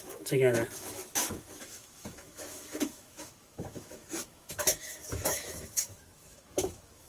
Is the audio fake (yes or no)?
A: yes